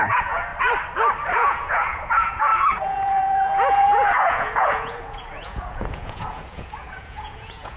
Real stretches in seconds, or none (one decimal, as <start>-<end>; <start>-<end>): 0.5-1.3